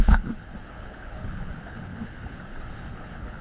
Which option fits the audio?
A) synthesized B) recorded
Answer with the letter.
A